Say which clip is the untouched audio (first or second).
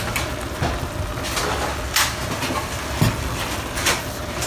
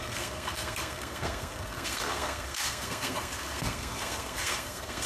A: first